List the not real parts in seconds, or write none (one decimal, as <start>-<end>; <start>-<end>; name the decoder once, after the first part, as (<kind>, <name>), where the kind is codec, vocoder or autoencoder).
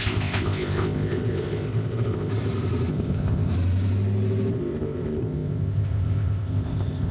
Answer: 0.0-2.3 (codec, ZipCodec); 2.9-3.5; 4.5-7.1